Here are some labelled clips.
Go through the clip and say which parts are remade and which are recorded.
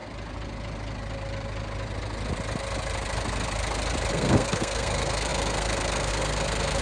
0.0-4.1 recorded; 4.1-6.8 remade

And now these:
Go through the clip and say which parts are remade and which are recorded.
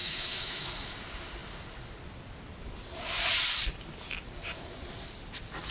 0.0-0.7 remade; 0.7-5.7 recorded